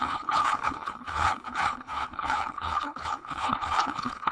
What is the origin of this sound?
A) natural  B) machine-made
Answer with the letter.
B